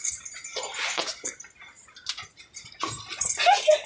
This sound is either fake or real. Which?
real